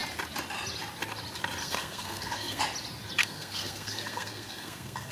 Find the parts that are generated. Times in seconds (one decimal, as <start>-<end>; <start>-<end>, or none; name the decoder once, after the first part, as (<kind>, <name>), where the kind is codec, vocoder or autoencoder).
1.6-2.6 (codec, SNAC); 3.2-5.1